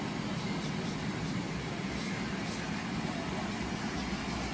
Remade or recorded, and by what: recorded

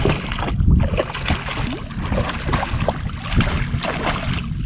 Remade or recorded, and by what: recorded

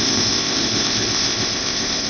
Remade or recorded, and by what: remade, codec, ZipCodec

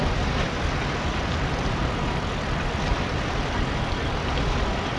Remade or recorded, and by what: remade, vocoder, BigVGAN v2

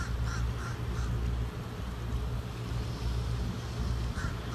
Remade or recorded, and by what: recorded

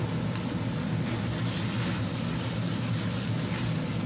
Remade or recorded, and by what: recorded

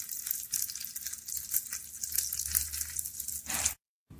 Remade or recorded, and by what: recorded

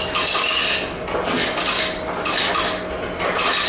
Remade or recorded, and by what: recorded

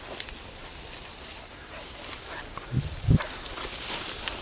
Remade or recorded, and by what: recorded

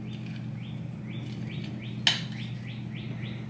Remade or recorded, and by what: recorded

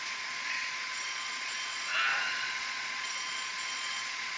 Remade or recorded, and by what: remade, vocoder, Vocos